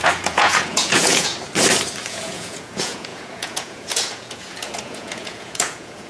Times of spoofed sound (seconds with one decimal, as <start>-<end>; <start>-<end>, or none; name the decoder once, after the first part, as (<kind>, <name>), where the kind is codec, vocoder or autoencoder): 0.0-1.3 (vocoder, Vocos); 2.1-6.1